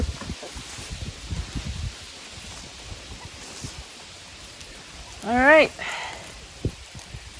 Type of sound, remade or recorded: recorded